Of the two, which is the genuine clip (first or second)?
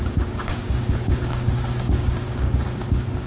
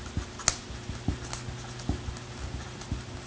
second